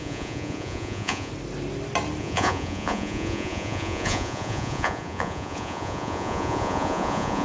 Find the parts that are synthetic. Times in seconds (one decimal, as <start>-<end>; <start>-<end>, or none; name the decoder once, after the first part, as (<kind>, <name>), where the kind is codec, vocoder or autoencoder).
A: 0.0-1.3 (vocoder, Vocos); 2.2-7.4